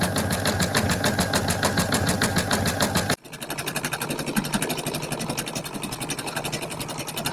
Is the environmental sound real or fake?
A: real